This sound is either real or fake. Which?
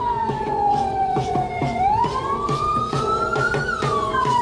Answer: fake